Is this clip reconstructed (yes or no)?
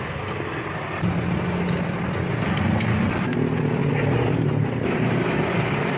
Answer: no